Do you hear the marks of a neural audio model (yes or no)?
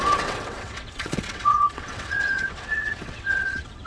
yes